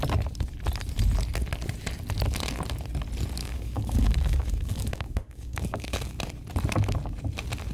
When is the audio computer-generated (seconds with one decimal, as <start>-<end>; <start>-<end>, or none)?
3.4-6.2